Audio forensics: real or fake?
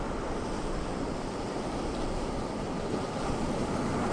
fake